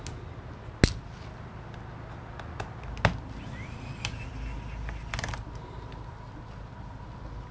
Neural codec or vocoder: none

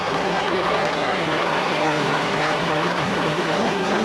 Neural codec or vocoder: codec, SNAC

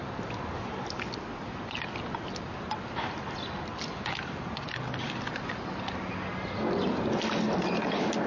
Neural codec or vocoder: none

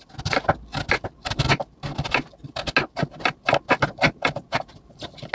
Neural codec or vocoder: none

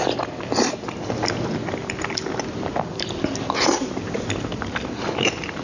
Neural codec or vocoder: none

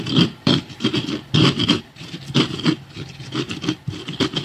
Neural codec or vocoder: vocoder, BigVGAN v2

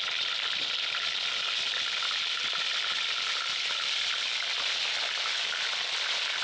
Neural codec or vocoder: none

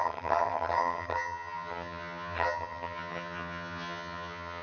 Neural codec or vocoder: vocoder, HiFi-GAN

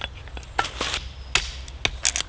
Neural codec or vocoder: none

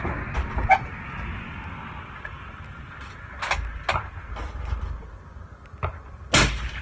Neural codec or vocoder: none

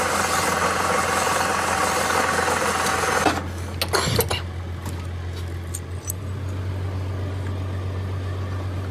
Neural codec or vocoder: none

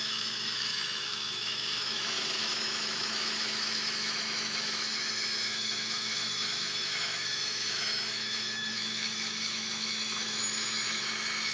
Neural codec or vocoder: autoencoder, DAC-VAE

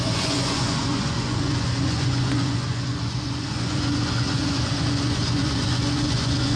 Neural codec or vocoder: vocoder, Vocos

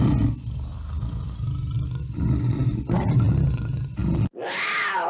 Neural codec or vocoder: none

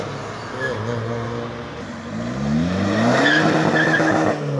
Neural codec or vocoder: none